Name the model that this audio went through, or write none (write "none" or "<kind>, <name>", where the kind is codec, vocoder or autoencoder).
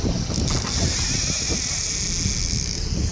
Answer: none